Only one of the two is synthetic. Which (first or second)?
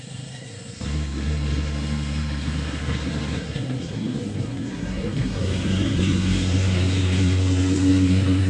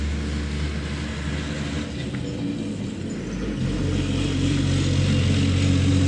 first